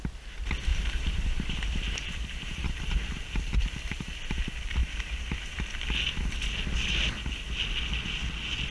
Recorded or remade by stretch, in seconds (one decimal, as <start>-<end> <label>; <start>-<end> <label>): 0.0-0.7 recorded; 0.7-2.8 remade; 2.8-4.8 recorded; 4.8-5.6 remade; 5.6-8.7 recorded